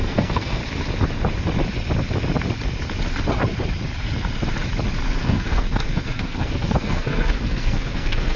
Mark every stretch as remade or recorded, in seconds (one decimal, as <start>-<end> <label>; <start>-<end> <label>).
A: 0.0-0.6 remade; 0.6-5.2 recorded; 5.2-8.4 remade